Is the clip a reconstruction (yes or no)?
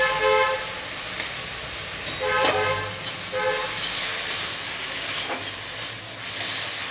no